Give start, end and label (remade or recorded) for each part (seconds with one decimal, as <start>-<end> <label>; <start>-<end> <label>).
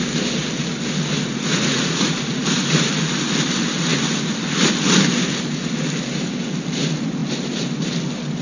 0.0-1.2 recorded; 1.2-2.6 remade; 2.6-8.4 recorded